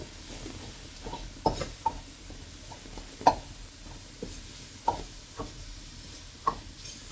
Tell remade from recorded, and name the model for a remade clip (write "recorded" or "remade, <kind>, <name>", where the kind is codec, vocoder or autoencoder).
recorded